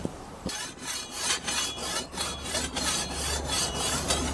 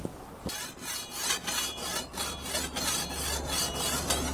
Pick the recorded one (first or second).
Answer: second